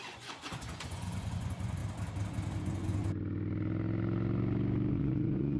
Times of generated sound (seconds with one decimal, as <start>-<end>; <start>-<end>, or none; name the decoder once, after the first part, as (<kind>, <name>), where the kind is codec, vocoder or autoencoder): 0.0-1.8 (vocoder, Vocos); 2.6-3.0; 4.9-5.6